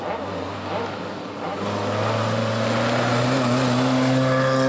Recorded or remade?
recorded